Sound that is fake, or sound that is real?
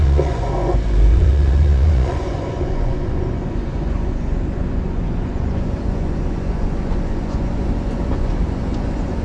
fake